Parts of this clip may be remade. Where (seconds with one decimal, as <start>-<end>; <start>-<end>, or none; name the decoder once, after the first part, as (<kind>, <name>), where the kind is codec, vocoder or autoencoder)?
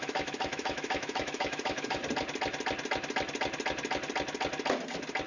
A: 0.0-2.0 (autoencoder, DAC-VAE)